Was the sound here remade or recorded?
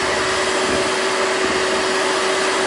recorded